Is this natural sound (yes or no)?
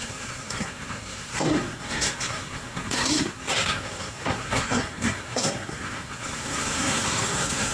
no